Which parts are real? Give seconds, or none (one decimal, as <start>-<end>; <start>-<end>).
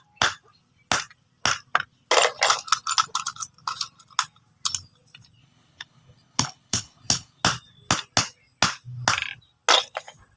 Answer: 0.0-5.4; 7.4-10.4